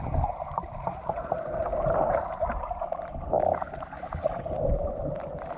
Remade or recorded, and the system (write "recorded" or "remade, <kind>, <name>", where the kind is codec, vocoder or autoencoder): remade, vocoder, BigVGAN v2